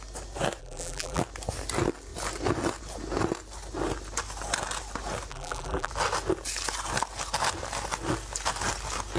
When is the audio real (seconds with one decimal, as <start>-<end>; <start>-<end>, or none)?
0.0-0.6; 1.2-5.3; 5.9-9.2